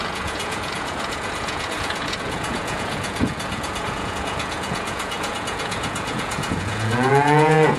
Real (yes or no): no